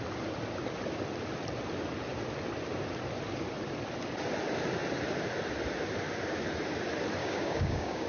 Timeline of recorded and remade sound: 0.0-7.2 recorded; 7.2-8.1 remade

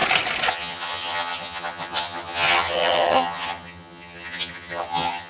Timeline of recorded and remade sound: 0.0-0.5 recorded; 0.5-5.3 remade

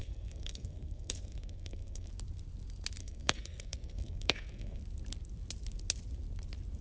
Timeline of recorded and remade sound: 0.0-2.1 remade; 2.1-3.0 recorded; 3.0-4.8 remade; 4.8-6.8 recorded

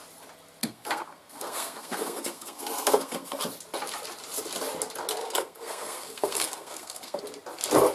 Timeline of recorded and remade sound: 0.0-0.6 recorded; 0.6-3.4 remade; 3.4-5.2 recorded; 5.2-7.2 remade; 7.2-7.9 recorded